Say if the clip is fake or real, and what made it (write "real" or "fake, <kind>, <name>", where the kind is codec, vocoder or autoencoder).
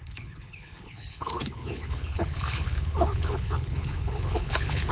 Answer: fake, codec, HILCodec